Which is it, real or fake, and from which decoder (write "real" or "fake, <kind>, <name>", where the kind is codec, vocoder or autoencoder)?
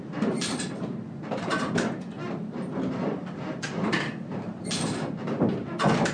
real